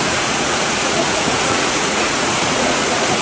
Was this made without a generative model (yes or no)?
no